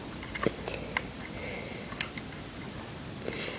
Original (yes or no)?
yes